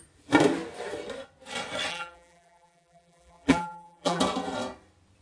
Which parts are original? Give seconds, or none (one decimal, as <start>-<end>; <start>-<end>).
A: 0.0-1.9; 4.2-5.2